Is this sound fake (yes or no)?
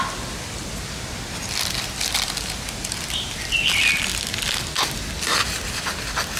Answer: no